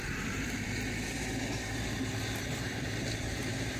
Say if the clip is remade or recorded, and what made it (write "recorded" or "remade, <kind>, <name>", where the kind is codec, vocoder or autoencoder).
remade, vocoder, BigVGAN v2